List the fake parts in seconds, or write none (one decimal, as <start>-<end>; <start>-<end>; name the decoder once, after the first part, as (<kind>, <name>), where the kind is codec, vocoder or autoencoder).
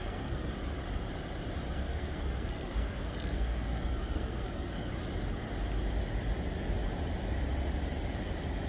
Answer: 0.0-0.5 (codec, SNAC); 1.7-4.9